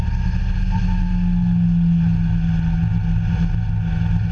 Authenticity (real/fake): real